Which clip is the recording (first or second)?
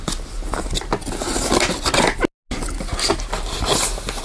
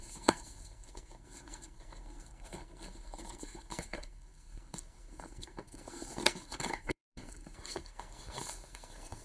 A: first